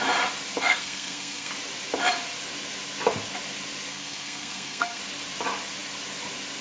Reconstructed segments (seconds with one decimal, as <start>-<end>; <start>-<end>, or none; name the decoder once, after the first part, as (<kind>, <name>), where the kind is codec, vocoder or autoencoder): 0.6-1.5 (codec, SNAC); 3.9-5.0